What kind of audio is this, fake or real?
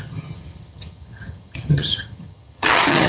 fake